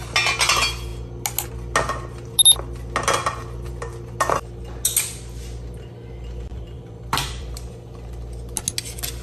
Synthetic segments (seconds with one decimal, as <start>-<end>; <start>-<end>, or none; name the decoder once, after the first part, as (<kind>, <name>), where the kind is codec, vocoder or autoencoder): 6.5-7.7 (vocoder, BigVGAN v2)